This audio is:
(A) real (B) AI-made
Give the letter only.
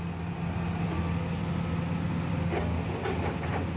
A